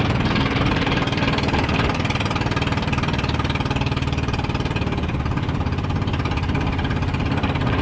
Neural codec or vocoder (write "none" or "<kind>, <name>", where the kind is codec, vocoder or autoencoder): vocoder, BigVGAN v2